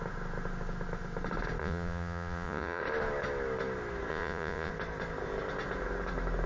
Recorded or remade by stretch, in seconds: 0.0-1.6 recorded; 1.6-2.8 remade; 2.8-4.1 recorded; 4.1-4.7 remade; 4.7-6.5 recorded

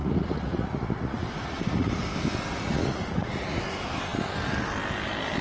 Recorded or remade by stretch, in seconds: 0.0-2.0 remade; 2.0-2.5 recorded; 2.5-3.6 remade; 3.6-5.4 recorded

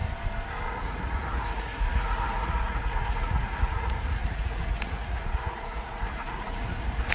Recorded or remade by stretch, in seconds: 0.0-0.7 recorded; 0.7-7.1 remade